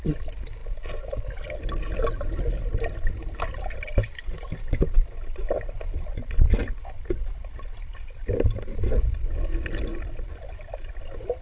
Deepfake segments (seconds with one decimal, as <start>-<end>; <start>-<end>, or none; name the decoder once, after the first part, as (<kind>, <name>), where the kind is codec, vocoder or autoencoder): none